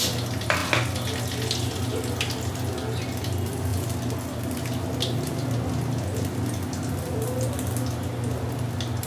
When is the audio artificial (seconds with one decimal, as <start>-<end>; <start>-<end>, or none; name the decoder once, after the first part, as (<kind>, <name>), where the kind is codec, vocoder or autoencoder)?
none